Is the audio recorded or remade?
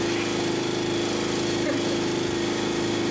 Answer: recorded